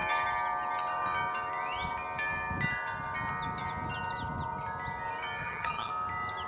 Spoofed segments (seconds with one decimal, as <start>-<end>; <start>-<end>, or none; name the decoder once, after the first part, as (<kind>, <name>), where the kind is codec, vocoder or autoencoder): 5.4-5.9 (vocoder, HiFi-GAN)